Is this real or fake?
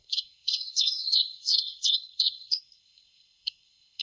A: fake